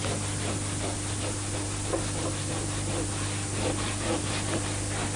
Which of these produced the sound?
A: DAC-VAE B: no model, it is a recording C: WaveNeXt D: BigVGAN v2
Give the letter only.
B